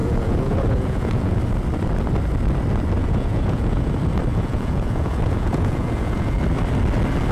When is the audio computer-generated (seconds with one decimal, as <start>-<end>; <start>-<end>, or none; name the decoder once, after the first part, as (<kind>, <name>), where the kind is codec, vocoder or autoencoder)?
0.0-1.4 (vocoder, Vocos); 3.0-3.9; 4.3-6.4